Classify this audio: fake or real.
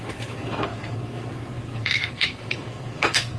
fake